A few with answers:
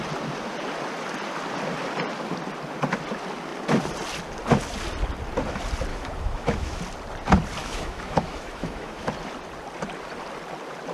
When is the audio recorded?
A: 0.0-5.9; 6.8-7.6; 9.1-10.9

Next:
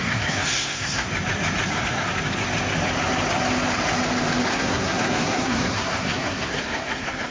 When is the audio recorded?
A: 1.1-1.7; 2.1-4.5